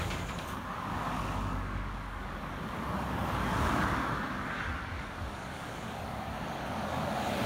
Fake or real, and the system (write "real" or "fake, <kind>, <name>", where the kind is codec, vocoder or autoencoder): fake, codec, DAC